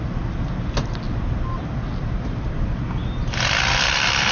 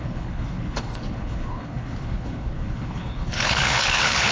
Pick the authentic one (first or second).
first